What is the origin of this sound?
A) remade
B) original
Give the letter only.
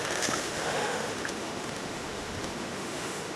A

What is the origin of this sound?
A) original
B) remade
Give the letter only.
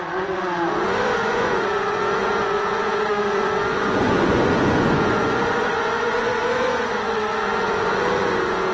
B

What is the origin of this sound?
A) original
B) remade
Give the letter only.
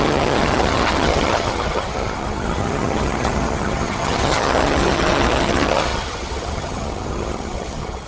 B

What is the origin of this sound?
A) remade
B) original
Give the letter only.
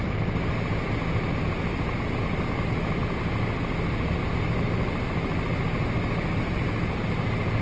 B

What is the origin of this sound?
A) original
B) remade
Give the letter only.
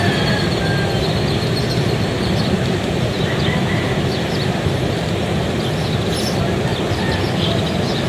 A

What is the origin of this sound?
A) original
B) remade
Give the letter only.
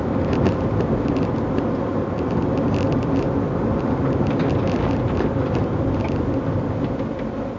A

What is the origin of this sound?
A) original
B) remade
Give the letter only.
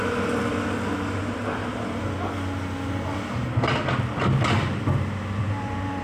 A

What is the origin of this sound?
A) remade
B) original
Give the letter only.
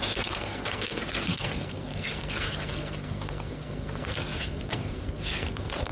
A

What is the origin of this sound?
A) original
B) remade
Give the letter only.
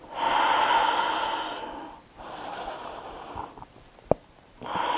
A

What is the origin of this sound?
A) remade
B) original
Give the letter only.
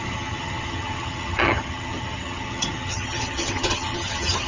A